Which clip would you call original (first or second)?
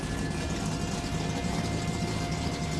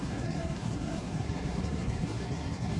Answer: first